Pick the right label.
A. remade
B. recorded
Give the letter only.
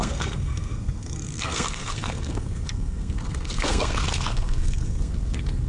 A